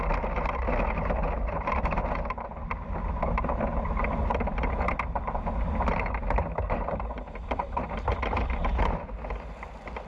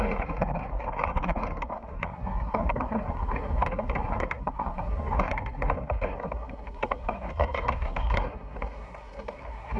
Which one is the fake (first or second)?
second